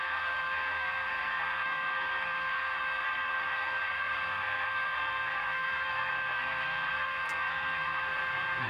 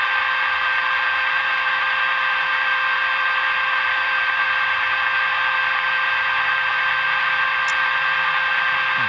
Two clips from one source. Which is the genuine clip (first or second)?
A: second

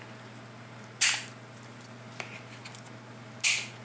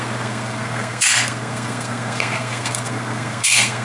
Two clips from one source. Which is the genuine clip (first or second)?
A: first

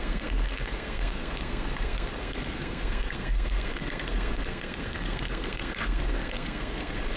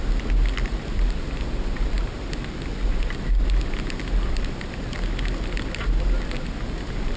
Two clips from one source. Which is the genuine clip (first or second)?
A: second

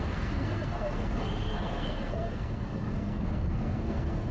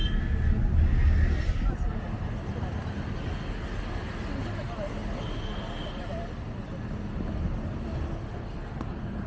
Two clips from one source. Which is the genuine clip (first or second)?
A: second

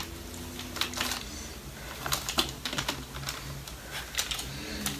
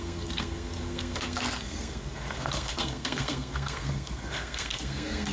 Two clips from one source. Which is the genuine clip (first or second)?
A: first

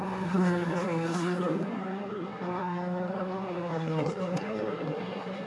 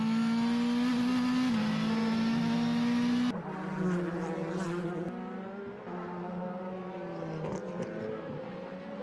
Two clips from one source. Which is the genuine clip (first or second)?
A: second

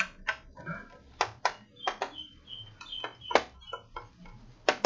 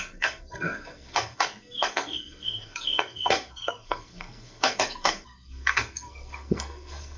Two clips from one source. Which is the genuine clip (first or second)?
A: first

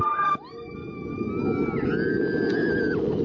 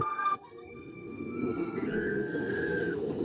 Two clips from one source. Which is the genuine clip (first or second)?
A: first